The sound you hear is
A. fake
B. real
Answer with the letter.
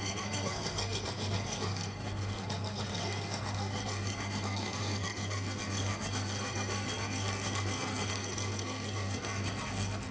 A